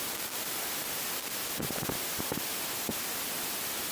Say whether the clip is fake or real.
real